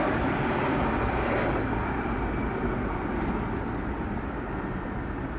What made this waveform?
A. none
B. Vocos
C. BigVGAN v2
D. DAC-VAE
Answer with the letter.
A